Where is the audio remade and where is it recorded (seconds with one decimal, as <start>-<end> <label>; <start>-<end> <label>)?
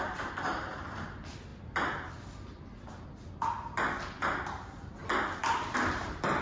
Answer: 0.0-6.4 recorded